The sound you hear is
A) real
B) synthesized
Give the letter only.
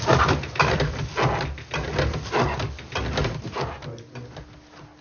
A